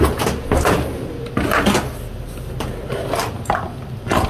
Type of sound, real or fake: real